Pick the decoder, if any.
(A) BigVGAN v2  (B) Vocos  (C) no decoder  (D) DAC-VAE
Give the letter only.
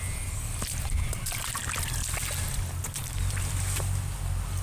C